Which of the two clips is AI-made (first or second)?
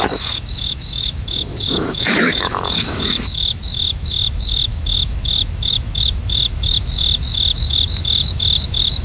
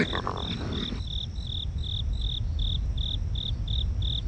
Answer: first